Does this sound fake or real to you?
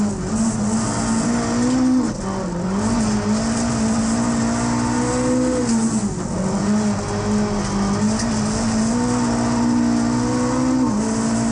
real